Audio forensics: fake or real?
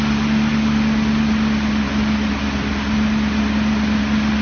real